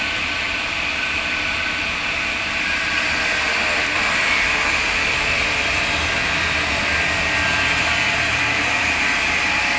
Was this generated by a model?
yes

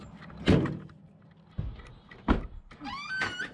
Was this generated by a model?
no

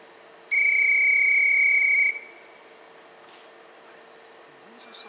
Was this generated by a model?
no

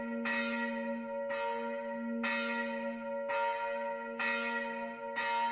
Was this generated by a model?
no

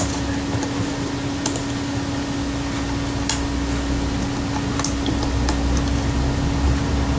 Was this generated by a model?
no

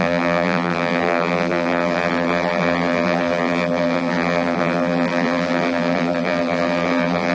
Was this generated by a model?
yes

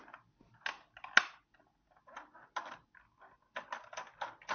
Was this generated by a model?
no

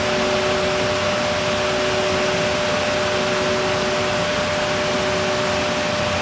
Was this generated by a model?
no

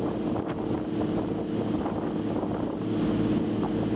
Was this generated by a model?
no